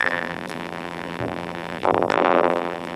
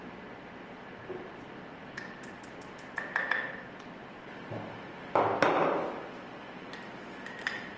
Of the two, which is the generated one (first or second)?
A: first